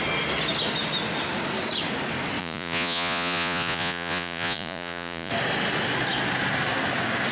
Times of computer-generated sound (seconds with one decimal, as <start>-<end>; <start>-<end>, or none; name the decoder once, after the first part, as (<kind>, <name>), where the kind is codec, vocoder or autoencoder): 2.4-5.3 (vocoder, Vocos)